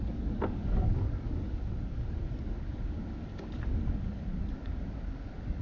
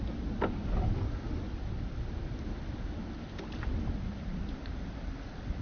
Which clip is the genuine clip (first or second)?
second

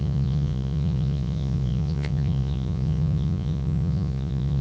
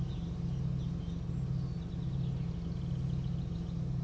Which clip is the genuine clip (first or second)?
second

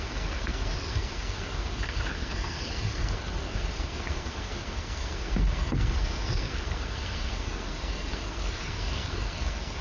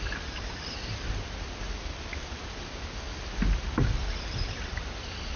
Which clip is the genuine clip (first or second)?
second